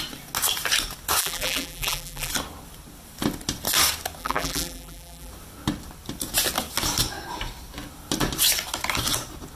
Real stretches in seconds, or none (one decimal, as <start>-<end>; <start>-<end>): 0.0-1.2; 2.3-4.2; 5.3-9.6